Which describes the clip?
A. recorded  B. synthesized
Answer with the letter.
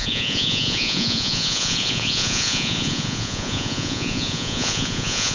B